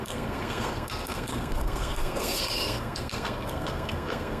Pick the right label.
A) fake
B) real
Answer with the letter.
A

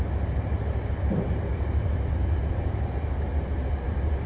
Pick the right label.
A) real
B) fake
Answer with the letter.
A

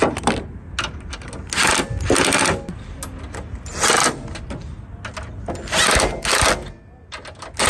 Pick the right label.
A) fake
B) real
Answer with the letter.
B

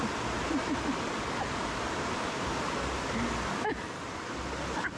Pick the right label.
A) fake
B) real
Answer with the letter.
B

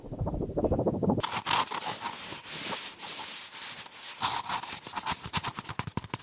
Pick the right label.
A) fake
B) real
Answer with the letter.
B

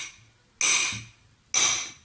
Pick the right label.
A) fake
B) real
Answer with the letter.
B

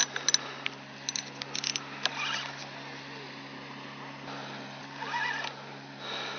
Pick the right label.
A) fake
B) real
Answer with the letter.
B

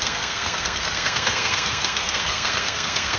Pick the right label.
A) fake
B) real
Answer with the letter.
A